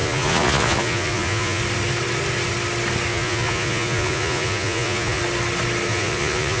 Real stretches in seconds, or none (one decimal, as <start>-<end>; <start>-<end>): 1.6-3.1; 5.2-5.9

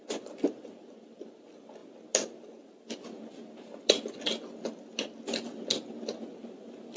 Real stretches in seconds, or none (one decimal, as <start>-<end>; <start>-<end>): 0.0-7.0

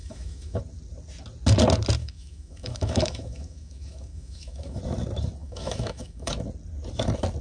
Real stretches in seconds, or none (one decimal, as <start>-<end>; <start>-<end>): 0.6-2.0; 4.8-5.4; 6.3-7.4

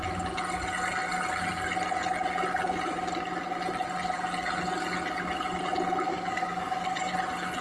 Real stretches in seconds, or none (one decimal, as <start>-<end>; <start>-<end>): 0.0-6.1; 7.1-7.6

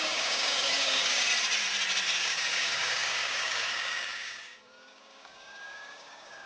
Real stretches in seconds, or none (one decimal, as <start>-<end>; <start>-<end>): 1.3-2.2